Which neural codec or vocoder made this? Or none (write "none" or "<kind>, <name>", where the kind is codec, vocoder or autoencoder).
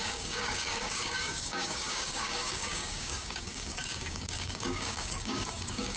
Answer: codec, DAC